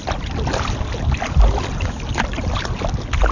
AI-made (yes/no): no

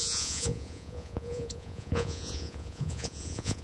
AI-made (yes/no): yes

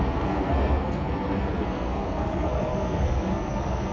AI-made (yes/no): yes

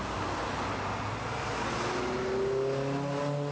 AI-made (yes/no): no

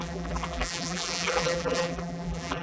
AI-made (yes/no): yes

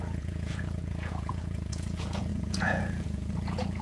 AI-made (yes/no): yes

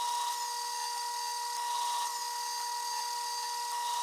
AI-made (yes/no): no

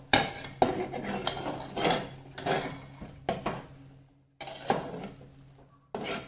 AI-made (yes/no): no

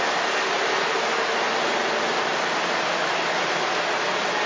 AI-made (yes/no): no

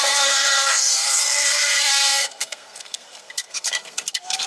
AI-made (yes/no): yes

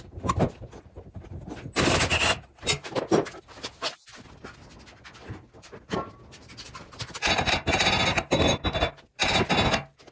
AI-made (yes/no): no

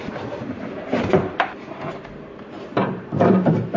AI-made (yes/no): yes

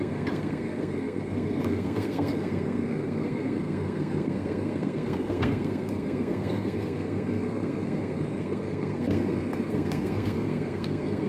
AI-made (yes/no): yes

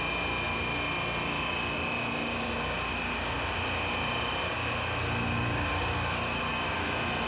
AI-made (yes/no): no